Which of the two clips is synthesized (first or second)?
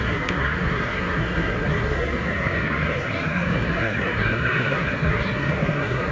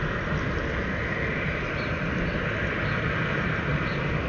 first